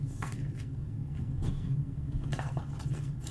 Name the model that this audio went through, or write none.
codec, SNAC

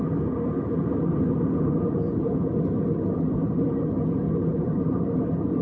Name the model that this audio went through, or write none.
none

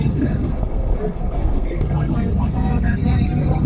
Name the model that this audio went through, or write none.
codec, SNAC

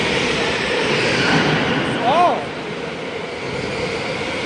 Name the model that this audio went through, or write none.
none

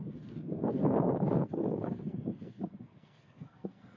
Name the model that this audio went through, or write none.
codec, SNAC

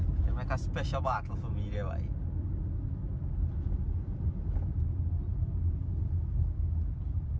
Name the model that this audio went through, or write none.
none